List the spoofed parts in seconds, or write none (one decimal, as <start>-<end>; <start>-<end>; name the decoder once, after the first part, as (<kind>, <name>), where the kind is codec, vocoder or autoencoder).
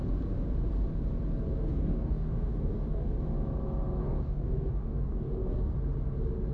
1.6-3.1 (codec, DAC); 4.0-5.7